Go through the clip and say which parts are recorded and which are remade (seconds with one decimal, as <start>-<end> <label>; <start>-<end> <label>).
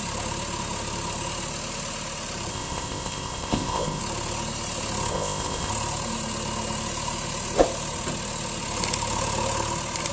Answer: 0.0-2.5 recorded; 2.5-4.0 remade; 4.0-5.1 recorded; 5.1-5.7 remade; 5.7-10.1 recorded